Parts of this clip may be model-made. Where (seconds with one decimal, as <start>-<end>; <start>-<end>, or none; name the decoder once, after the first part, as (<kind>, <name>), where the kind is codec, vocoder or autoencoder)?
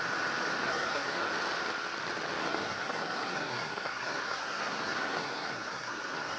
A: 0.6-1.3 (codec, SNAC); 2.4-6.4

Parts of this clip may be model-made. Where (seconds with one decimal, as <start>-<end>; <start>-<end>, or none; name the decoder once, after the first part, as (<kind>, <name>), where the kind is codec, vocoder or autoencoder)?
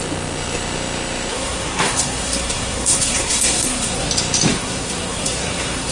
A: 1.3-4.1 (codec, SNAC); 4.5-5.9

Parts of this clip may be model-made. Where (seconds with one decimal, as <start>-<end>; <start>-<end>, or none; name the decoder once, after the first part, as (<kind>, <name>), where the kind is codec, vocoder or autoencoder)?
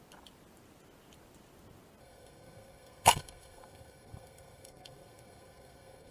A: 2.0-6.1 (codec, SNAC)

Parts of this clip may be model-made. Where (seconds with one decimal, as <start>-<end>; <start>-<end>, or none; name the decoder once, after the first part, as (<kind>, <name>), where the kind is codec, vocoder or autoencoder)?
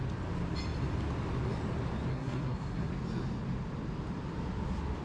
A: 2.1-2.9 (codec, SNAC)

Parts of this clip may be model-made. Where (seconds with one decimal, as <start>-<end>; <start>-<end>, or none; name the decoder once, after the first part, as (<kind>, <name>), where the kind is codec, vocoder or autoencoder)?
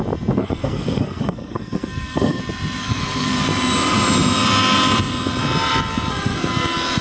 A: 0.4-2.4 (codec, SNAC); 2.8-3.3